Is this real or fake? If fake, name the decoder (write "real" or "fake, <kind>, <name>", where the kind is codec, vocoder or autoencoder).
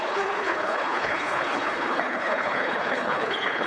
fake, codec, HILCodec